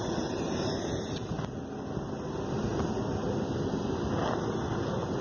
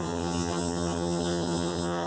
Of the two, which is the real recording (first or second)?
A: first